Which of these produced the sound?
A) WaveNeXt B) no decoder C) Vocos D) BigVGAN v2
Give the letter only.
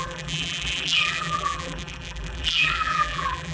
D